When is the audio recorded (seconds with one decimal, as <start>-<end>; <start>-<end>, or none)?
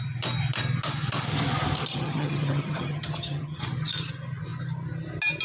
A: 0.0-1.9; 3.6-5.4